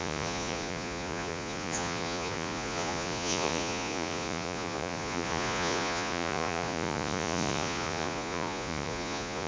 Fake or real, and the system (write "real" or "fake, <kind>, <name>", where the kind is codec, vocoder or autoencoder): fake, vocoder, Vocos